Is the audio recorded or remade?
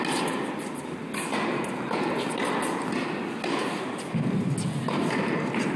recorded